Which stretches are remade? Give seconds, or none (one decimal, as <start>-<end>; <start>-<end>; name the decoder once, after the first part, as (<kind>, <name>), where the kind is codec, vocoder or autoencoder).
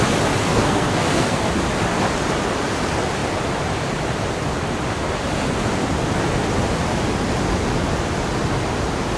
0.5-1.5 (codec, SNAC)